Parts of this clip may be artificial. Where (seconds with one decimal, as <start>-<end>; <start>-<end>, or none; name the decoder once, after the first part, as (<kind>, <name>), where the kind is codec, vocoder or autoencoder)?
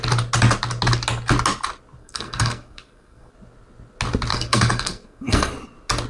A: 2.0-3.3 (codec, SNAC); 4.3-5.5